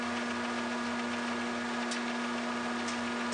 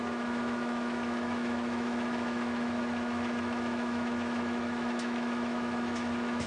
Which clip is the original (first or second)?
first